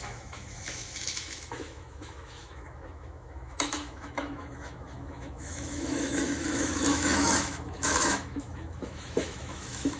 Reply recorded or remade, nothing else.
remade